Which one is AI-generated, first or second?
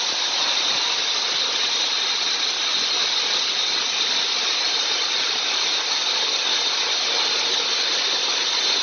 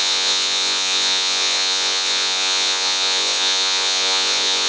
second